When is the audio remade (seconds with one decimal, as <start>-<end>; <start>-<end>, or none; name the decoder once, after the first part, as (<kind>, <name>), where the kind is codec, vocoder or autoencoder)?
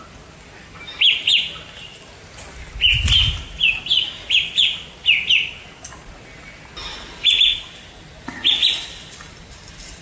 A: none